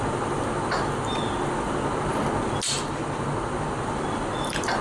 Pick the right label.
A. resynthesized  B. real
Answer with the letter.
B